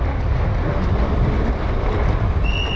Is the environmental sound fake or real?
real